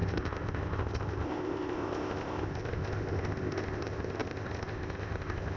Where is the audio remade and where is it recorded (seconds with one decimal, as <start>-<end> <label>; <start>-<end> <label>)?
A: 0.0-5.6 remade